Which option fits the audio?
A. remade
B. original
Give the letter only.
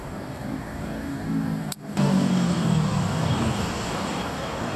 A